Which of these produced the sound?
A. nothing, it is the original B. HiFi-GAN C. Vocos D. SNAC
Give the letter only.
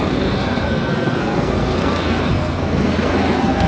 D